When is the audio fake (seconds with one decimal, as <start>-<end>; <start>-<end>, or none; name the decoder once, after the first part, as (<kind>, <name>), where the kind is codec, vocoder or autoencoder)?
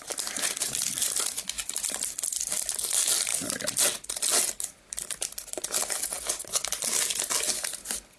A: none